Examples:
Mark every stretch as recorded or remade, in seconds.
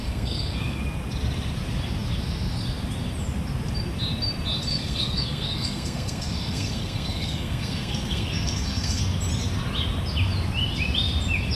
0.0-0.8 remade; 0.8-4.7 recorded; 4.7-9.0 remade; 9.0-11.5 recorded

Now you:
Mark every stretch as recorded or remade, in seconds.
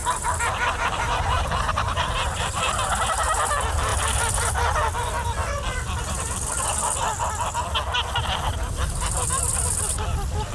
0.0-2.7 remade; 2.7-10.5 recorded